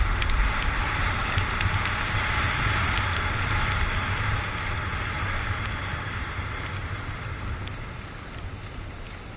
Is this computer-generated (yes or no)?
no